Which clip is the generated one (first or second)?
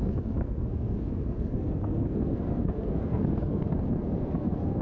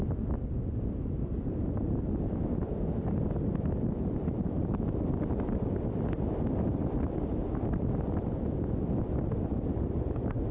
first